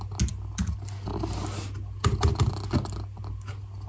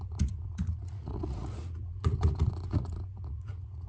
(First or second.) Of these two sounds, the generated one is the second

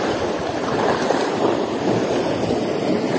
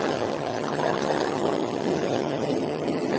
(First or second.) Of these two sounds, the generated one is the second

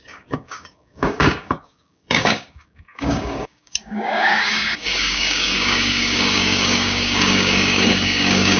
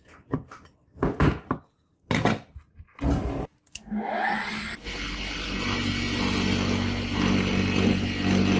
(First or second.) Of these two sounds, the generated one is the first